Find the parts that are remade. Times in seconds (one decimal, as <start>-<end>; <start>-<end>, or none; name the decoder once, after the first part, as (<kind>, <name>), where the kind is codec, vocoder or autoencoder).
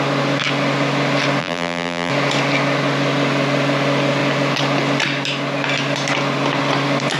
1.4-2.1 (vocoder, BigVGAN v2)